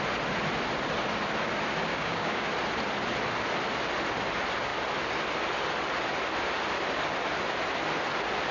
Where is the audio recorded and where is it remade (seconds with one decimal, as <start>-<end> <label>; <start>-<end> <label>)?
0.0-1.9 recorded; 1.9-2.5 remade; 2.5-8.5 recorded